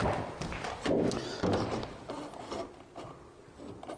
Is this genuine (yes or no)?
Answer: yes